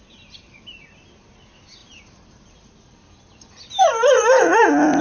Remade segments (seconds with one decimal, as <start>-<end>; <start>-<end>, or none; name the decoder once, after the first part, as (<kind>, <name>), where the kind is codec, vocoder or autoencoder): 1.8-5.0 (vocoder, BigVGAN v2)